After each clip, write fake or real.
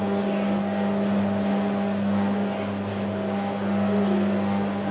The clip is real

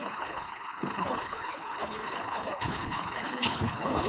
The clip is fake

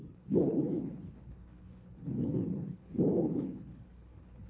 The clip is fake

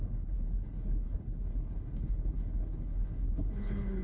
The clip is fake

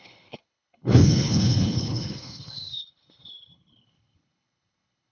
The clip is fake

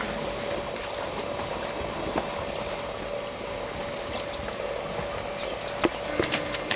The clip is real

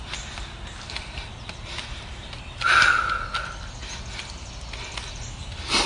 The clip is real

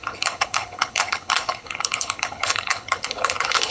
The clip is fake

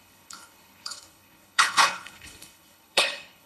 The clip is fake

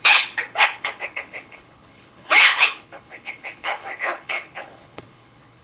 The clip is fake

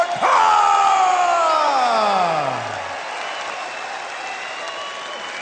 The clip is real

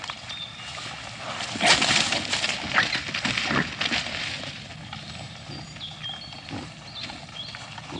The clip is real